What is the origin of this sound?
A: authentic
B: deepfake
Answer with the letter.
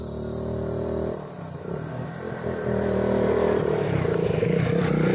A